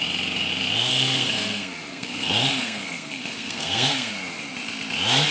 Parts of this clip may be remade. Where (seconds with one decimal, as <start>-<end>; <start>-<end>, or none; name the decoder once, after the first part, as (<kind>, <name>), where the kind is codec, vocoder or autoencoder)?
0.9-4.1 (codec, SNAC)